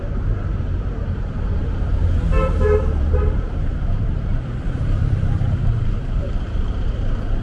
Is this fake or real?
fake